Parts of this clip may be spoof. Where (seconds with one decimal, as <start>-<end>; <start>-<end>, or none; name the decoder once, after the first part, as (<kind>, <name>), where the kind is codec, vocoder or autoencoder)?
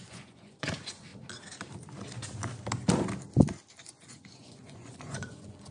0.0-1.1 (vocoder, Vocos); 3.9-5.7